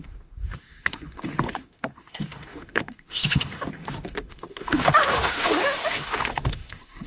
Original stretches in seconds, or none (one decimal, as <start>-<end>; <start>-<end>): none